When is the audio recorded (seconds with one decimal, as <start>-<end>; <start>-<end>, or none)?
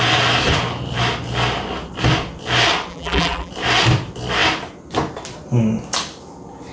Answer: 0.0-2.9; 3.5-6.7